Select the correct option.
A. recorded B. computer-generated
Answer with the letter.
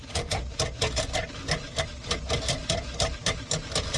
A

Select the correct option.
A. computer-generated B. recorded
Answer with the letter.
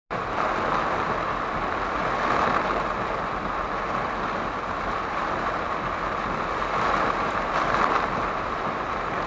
B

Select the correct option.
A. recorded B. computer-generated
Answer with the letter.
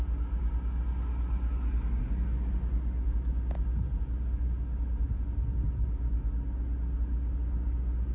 A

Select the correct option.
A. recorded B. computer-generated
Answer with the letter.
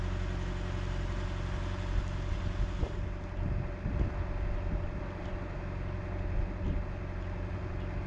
A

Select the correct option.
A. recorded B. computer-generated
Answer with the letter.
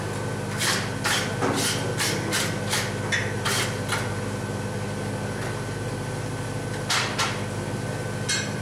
A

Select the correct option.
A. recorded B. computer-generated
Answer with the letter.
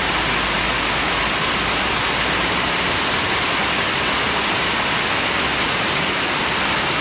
A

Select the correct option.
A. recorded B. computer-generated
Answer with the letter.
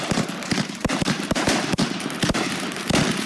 B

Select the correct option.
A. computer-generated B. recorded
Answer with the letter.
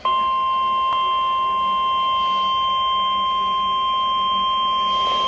B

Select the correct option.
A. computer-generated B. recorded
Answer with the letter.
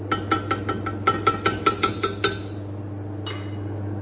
B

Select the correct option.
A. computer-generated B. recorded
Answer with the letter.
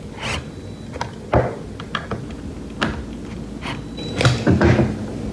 B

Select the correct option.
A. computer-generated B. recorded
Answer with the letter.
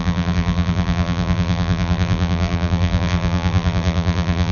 A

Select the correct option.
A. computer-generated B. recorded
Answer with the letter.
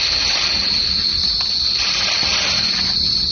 B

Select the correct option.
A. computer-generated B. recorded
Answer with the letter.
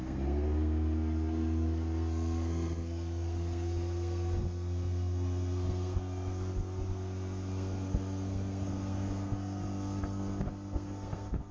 A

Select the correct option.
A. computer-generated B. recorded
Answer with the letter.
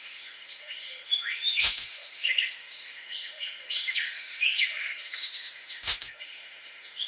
A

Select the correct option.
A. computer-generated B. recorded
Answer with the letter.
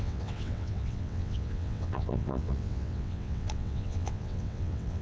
A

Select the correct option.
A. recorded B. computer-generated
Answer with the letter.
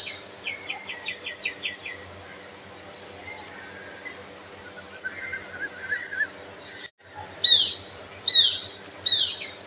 A